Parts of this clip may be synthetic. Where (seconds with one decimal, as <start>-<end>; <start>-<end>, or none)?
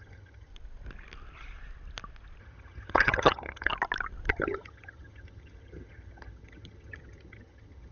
0.0-0.5; 2.4-3.7; 4.3-7.9